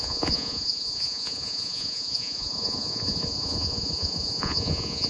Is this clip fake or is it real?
fake